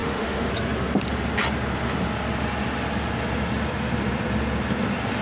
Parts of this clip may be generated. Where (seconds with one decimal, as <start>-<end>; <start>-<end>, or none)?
0.0-0.5